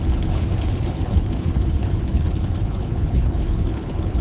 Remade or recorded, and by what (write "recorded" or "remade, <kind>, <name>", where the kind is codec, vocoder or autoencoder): remade, codec, HILCodec